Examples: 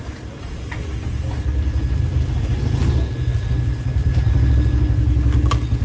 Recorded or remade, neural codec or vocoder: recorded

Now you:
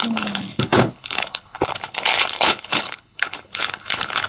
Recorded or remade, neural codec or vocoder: remade, codec, HILCodec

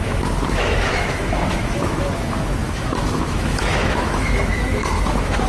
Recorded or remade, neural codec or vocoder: remade, autoencoder, DAC-VAE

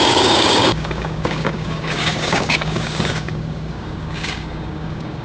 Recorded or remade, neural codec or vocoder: remade, codec, DAC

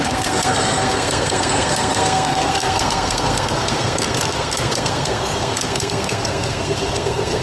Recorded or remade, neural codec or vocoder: remade, codec, SNAC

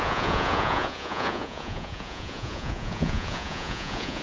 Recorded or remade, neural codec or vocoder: remade, vocoder, Vocos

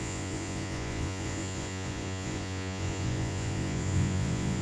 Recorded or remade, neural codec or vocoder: remade, vocoder, Vocos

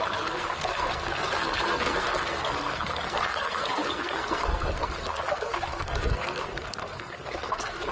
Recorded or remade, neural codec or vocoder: remade, codec, SNAC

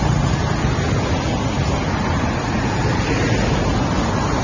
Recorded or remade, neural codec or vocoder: recorded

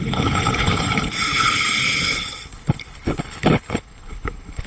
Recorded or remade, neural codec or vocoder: remade, codec, HILCodec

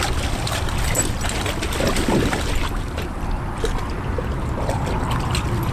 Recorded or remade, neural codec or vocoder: recorded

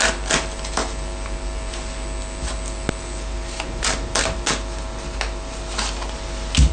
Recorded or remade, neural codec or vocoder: recorded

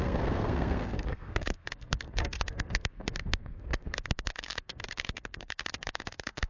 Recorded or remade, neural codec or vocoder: remade, codec, SNAC